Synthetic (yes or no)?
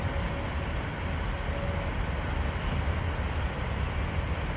no